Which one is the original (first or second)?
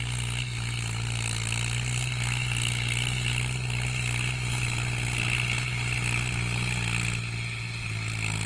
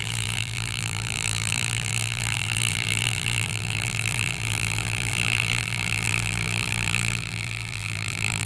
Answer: first